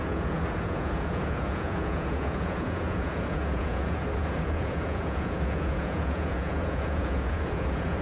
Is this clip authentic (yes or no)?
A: no